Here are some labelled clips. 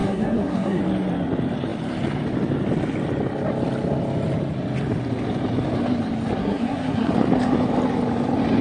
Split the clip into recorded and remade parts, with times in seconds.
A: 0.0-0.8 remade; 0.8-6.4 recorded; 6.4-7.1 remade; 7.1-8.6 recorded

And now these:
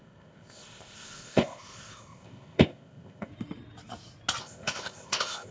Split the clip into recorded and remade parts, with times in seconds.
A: 0.0-3.3 remade; 3.3-4.4 recorded; 4.4-5.5 remade

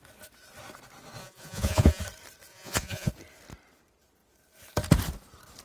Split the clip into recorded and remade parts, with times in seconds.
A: 0.0-1.2 recorded; 1.2-2.0 remade; 2.0-2.5 recorded; 2.5-3.1 remade; 3.1-5.6 recorded

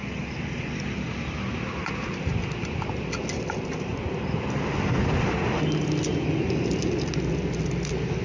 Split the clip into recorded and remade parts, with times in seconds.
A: 0.0-1.5 remade; 1.5-3.9 recorded; 3.9-5.6 remade; 5.6-8.2 recorded